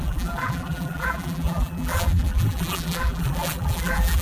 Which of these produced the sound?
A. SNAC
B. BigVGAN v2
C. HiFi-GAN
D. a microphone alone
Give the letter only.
B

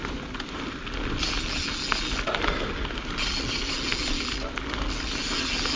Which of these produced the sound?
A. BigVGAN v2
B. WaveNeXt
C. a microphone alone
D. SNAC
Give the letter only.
C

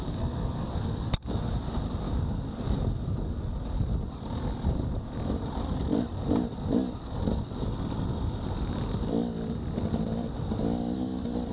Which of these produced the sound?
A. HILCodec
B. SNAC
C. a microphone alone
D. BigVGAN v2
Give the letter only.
C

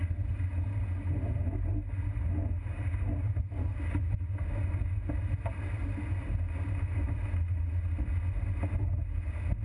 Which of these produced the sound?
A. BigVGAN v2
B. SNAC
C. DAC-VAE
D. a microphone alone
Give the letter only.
D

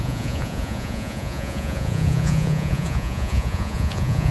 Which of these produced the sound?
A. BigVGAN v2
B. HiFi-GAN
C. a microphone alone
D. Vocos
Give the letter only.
D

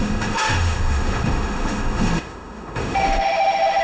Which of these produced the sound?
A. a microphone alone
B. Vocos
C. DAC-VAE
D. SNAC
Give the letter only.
C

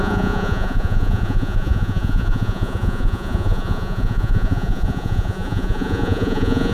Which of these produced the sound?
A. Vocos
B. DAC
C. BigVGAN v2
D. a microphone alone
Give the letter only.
A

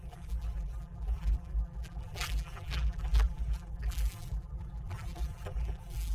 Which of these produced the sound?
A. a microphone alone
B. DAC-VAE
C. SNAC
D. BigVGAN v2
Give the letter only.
D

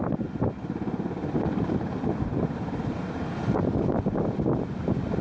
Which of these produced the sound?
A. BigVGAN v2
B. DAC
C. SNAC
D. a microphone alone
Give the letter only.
A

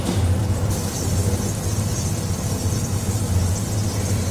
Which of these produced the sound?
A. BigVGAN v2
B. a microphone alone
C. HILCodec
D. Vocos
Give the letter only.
B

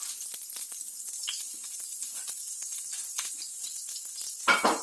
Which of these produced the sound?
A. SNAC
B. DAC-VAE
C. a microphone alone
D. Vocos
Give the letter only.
C